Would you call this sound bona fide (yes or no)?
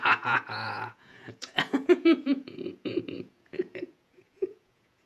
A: no